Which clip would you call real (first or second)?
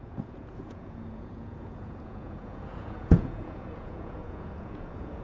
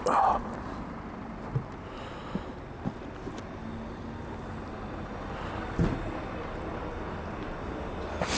second